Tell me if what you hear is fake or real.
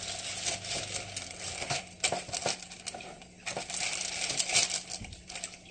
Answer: real